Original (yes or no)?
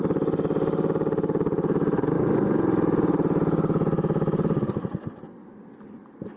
yes